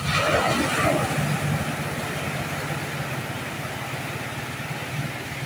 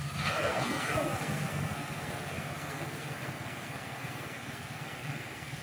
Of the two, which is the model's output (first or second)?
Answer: second